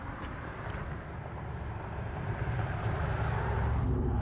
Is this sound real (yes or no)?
no